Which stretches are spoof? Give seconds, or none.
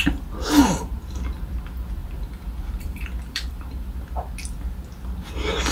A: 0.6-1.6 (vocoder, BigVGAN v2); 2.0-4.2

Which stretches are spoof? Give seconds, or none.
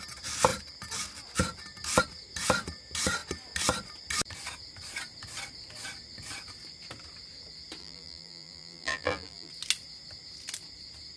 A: 7.8-9.5 (vocoder, BigVGAN v2)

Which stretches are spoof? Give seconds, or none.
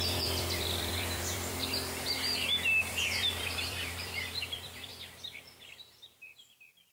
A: 0.0-4.9 (vocoder, BigVGAN v2); 5.7-6.9